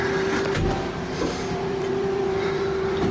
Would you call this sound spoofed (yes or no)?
yes